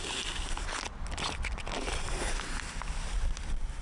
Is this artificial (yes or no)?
no